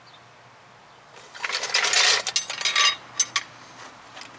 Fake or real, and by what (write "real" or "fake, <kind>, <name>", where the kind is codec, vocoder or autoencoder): real